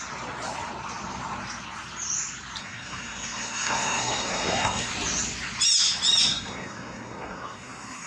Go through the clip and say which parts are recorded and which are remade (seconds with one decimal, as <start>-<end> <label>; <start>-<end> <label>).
0.0-2.6 recorded; 2.6-4.9 remade; 4.9-6.3 recorded; 6.3-8.1 remade